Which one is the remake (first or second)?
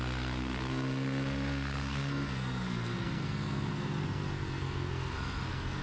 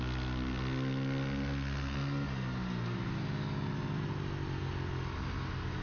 first